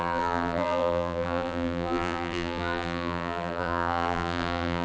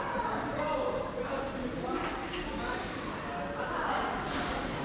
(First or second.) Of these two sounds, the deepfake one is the first